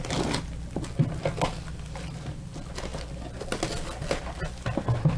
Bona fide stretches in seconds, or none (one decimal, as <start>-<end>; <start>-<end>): 0.0-5.2